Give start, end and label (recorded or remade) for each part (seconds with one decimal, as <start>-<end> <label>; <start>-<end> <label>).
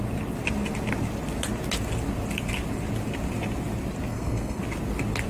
0.0-4.1 recorded; 4.1-4.6 remade; 4.6-5.3 recorded